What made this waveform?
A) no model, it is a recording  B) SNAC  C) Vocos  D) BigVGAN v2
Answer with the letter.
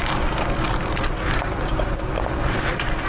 A